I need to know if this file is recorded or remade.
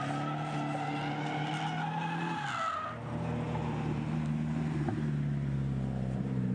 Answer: recorded